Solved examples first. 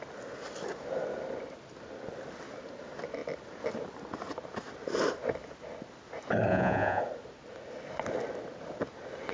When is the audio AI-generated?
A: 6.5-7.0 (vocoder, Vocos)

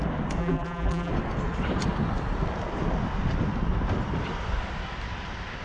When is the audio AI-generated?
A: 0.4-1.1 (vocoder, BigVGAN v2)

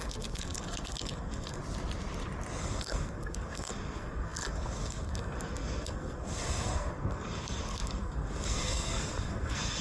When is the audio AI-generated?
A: 0.0-1.6 (codec, SNAC); 2.6-9.8